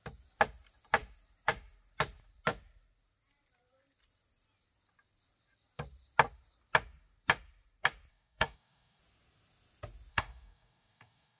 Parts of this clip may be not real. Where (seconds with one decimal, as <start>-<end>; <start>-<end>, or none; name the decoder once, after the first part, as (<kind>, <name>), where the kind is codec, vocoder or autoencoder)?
8.1-9.0 (codec, DAC); 10.1-11.4